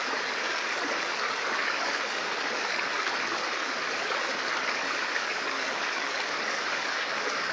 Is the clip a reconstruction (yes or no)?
yes